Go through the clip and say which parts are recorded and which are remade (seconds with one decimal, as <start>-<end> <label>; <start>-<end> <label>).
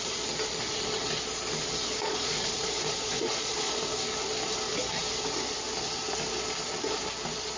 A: 0.0-2.0 recorded; 2.0-3.8 remade; 3.8-7.6 recorded